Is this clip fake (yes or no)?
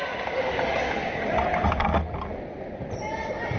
no